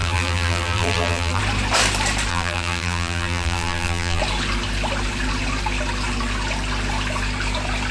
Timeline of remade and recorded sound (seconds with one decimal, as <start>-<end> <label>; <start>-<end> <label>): 0.0-1.4 remade; 1.4-2.3 recorded; 2.3-4.2 remade; 4.2-7.9 recorded